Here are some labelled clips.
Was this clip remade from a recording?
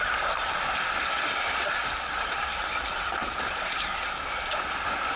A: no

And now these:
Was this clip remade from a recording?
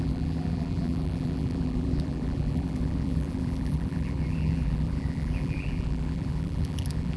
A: yes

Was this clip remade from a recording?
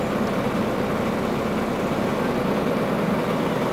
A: no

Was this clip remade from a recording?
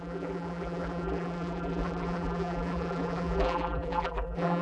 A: yes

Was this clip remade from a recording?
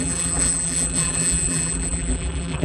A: yes